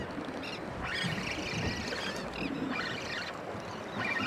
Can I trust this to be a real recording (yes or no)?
yes